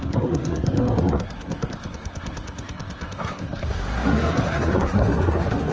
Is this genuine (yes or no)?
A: no